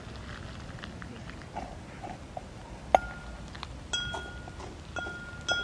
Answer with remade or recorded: recorded